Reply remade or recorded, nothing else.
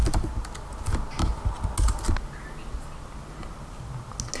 recorded